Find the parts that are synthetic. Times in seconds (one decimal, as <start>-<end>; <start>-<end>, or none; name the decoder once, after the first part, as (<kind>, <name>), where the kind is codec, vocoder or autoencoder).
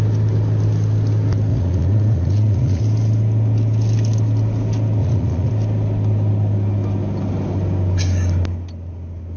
1.5-2.8 (vocoder, Vocos); 5.0-5.5